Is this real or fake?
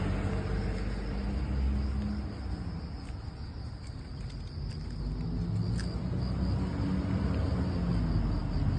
real